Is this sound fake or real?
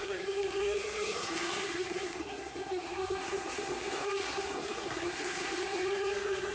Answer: fake